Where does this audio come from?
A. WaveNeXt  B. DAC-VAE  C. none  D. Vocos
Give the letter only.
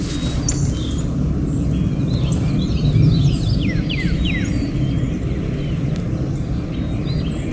C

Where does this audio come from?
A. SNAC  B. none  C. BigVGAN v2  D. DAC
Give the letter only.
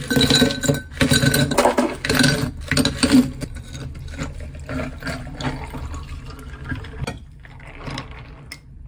B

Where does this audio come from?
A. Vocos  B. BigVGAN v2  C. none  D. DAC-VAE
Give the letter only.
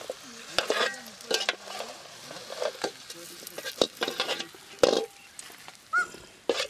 C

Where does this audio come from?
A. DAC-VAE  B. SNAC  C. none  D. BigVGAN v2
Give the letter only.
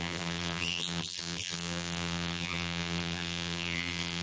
D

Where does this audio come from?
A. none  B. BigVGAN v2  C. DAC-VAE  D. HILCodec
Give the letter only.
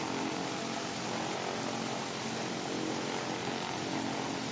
A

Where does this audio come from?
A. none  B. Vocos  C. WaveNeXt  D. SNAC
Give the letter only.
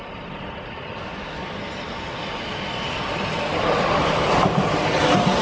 A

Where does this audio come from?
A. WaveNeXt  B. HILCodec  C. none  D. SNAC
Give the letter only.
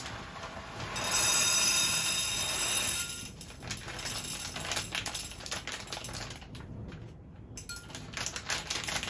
C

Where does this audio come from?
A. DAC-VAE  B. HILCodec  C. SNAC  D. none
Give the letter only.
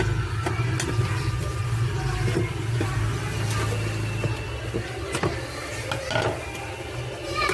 D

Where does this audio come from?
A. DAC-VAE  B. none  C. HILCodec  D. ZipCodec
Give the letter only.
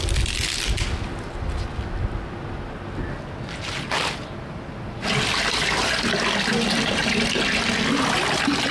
B